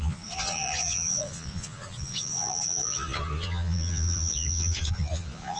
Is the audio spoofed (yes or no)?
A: yes